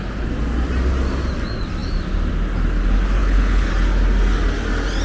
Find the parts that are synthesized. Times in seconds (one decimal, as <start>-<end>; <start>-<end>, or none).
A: 3.2-3.7